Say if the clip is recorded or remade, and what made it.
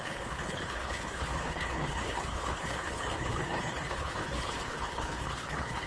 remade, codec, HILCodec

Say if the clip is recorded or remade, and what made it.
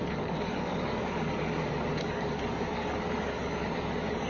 remade, codec, DAC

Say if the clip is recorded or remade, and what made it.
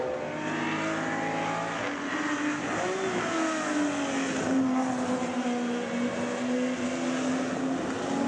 recorded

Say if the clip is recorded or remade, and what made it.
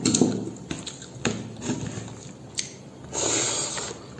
recorded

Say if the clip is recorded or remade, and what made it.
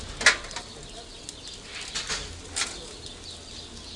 recorded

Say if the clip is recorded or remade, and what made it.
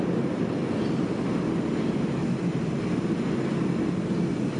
recorded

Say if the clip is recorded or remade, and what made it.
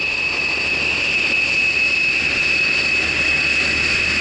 recorded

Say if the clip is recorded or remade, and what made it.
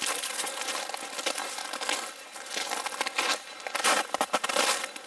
recorded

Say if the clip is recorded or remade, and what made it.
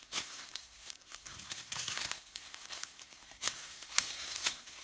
remade, codec, SNAC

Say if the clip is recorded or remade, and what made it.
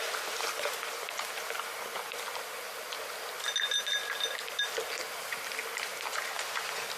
recorded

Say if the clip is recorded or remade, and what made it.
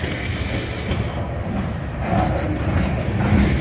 recorded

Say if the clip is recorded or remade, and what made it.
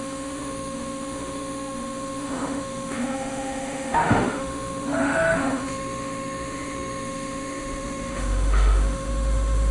remade, autoencoder, DAC-VAE